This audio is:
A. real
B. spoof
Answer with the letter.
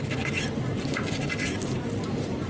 A